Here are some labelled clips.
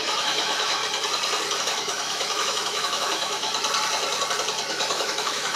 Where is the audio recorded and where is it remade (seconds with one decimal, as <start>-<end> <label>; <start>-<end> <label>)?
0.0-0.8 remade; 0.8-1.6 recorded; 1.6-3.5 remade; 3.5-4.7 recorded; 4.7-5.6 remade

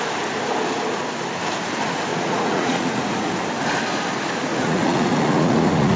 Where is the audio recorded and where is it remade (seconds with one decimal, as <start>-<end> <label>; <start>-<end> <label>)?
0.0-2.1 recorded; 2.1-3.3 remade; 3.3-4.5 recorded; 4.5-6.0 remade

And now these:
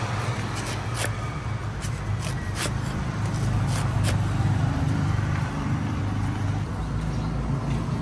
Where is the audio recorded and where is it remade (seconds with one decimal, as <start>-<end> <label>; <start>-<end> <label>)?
0.0-1.6 recorded; 1.6-6.0 remade; 6.0-8.0 recorded

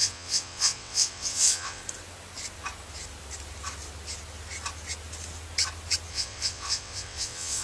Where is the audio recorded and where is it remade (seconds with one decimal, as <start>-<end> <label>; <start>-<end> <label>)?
0.0-1.8 remade; 1.8-6.1 recorded; 6.1-7.6 remade

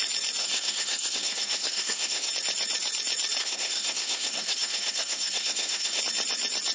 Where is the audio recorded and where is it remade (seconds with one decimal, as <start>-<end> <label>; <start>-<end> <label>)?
0.0-0.4 recorded; 0.4-2.3 remade; 2.3-3.4 recorded; 3.4-6.0 remade; 6.0-6.7 recorded

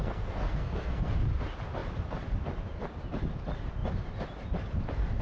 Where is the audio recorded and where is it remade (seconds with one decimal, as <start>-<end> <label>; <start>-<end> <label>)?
0.0-1.2 remade; 1.2-5.2 recorded